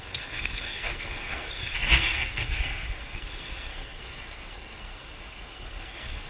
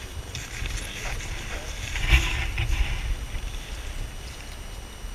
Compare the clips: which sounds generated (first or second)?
first